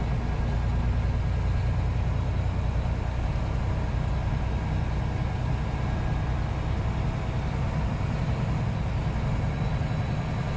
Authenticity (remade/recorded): recorded